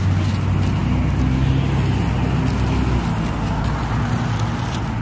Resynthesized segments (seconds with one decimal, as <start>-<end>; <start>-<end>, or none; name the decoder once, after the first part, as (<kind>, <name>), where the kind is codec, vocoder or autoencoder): none